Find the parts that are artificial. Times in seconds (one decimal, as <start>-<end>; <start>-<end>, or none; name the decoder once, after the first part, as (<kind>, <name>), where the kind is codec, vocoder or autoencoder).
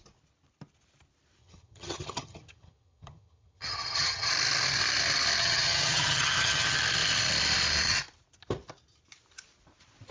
1.4-4.3 (vocoder, HiFi-GAN); 5.4-6.8